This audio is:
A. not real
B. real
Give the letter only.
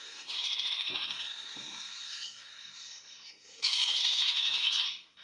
A